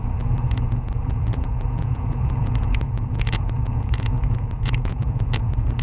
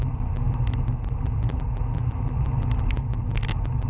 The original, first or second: second